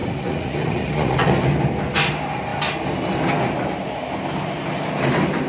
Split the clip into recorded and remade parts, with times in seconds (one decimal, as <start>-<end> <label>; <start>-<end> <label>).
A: 0.0-1.3 remade; 1.3-5.5 recorded